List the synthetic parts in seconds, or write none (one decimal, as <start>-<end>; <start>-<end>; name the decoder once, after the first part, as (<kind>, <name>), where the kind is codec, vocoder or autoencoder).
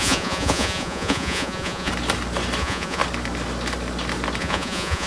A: 0.0-1.9 (vocoder, Vocos); 2.6-3.0; 4.4-5.1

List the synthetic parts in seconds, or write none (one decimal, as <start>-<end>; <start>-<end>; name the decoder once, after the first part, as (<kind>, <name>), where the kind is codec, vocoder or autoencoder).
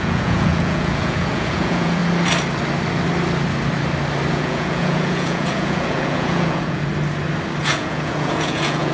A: 0.0-2.0 (vocoder, Vocos); 4.3-6.9; 7.6-8.9